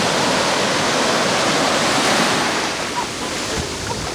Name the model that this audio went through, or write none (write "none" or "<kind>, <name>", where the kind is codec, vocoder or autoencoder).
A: none